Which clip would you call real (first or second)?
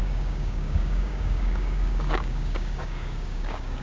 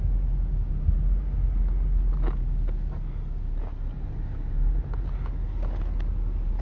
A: second